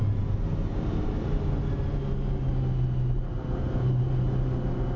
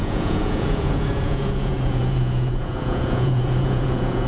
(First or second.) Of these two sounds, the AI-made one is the second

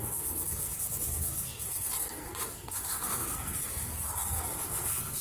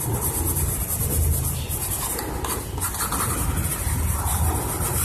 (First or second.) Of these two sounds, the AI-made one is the first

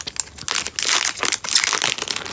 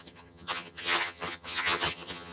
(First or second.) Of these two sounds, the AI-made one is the second